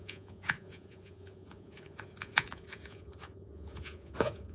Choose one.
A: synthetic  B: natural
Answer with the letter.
A